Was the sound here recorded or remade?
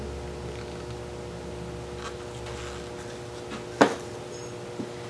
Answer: recorded